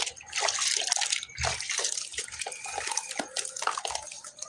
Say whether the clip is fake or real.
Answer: real